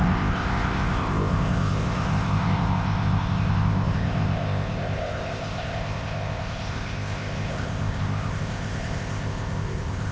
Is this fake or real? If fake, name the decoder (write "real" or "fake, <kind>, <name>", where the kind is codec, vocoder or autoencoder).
fake, codec, ZipCodec